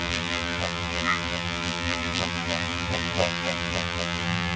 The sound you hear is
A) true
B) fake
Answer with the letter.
B